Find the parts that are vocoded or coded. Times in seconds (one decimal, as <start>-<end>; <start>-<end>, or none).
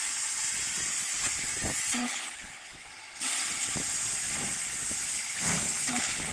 0.9-1.5; 2.0-2.9; 5.0-6.3